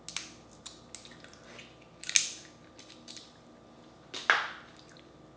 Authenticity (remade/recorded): recorded